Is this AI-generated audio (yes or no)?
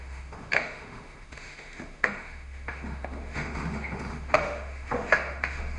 yes